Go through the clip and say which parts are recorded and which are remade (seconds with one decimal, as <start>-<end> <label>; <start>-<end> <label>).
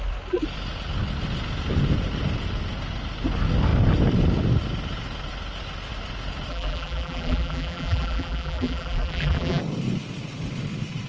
0.0-6.5 recorded; 6.5-9.6 remade; 9.6-11.1 recorded